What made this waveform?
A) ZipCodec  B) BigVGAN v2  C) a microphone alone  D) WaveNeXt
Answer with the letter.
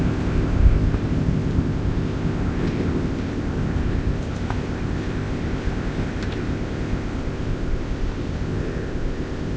A